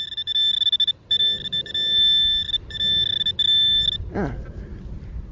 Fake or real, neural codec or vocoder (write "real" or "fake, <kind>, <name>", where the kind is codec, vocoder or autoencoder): real